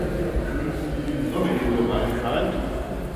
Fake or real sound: real